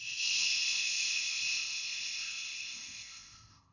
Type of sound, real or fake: fake